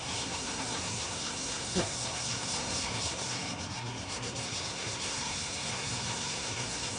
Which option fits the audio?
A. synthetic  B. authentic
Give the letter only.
A